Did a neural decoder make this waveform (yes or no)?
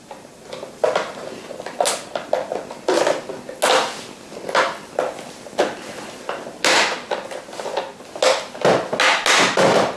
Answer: no